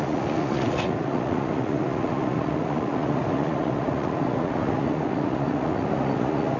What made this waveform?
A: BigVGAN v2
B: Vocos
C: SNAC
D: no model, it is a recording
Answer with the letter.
B